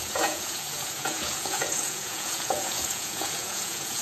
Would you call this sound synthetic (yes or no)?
yes